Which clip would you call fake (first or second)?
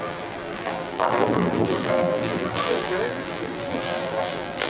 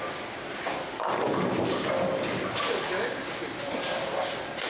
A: first